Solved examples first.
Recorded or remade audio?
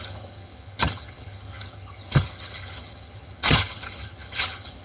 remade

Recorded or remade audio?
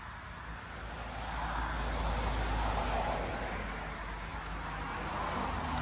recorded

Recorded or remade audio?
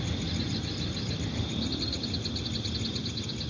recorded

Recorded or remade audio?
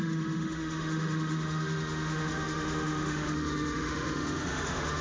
remade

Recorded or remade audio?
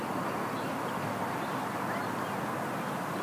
recorded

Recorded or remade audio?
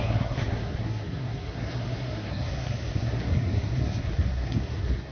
remade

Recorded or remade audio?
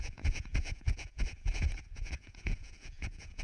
remade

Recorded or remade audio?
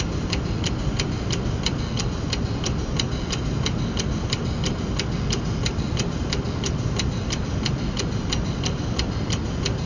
recorded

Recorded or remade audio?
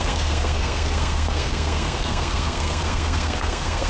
remade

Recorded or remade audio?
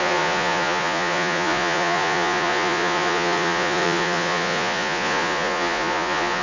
remade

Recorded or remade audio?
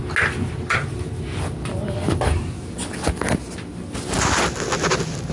recorded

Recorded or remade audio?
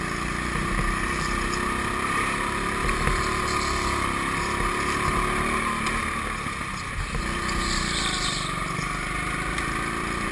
recorded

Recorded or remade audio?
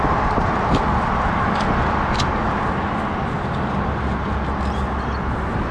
recorded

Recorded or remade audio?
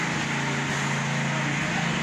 recorded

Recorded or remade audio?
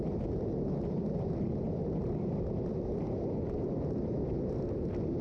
recorded